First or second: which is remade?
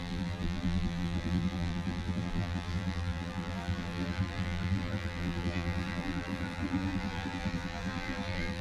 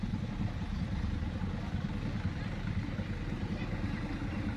first